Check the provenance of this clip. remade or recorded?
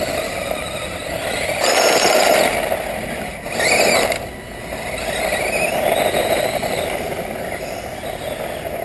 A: recorded